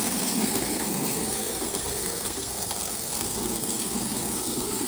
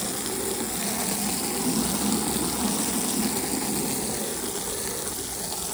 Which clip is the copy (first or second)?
first